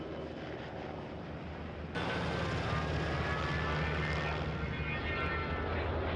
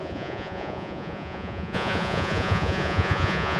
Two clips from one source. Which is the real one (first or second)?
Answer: first